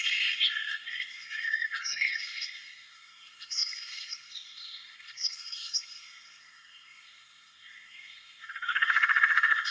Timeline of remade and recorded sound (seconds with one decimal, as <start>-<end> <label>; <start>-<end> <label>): 0.0-9.7 remade